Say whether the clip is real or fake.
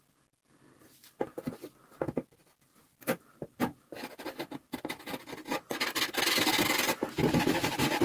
real